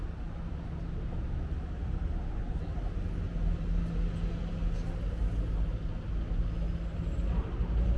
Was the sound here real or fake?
real